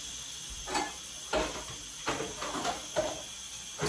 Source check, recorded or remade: recorded